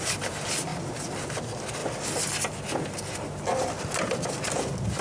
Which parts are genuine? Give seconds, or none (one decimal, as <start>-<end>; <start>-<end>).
0.0-5.0

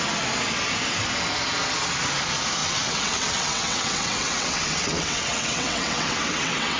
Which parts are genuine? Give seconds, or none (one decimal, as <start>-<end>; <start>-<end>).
0.0-2.6

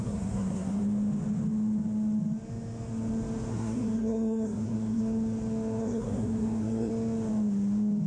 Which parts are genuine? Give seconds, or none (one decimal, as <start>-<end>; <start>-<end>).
0.8-3.5; 5.0-5.8; 6.9-8.1